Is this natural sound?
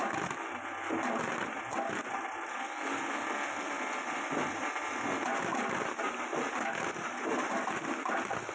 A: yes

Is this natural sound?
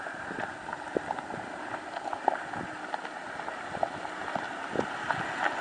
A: yes